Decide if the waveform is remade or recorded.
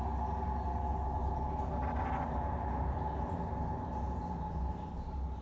recorded